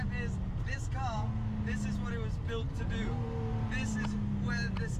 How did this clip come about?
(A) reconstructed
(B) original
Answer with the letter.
B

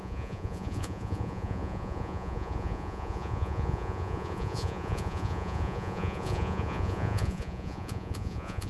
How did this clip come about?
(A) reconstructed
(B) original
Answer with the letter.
A